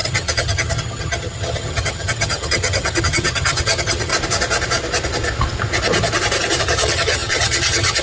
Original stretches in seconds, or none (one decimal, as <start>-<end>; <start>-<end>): 4.1-6.6